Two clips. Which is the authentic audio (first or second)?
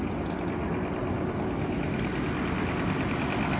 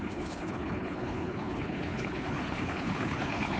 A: first